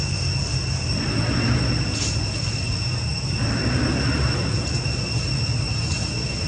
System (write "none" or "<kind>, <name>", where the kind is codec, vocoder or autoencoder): none